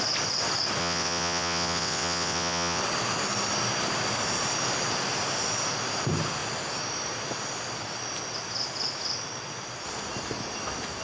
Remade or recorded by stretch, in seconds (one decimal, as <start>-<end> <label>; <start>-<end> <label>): 0.0-0.8 recorded; 0.8-2.8 remade; 2.8-11.0 recorded